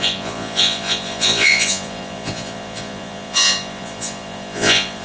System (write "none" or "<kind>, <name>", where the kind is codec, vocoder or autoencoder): vocoder, Vocos